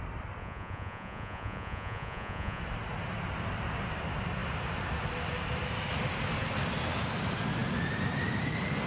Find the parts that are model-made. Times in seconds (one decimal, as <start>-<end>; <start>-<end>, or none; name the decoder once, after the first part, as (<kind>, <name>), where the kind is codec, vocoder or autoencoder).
0.4-2.6 (vocoder, Vocos)